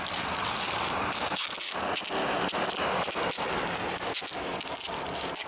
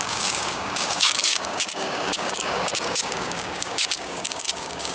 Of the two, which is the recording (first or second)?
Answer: first